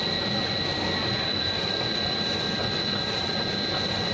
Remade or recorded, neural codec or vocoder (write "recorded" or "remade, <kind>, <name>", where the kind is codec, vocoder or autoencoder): remade, vocoder, BigVGAN v2